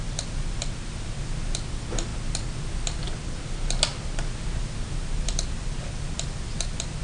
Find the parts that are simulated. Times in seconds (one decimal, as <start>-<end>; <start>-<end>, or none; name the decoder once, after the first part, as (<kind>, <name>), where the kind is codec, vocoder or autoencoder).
none